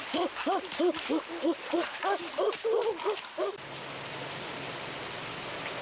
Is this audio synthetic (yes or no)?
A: no